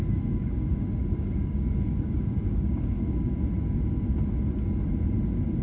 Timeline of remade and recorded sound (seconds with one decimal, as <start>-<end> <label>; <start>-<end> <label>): 0.0-3.4 remade; 3.4-5.6 recorded